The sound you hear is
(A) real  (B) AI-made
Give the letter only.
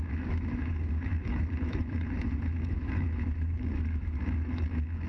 B